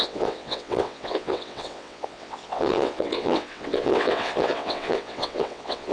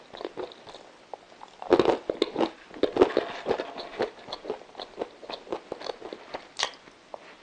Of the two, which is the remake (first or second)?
first